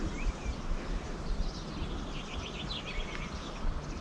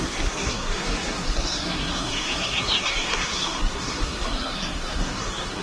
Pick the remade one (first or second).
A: second